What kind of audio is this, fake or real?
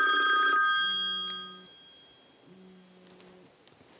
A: real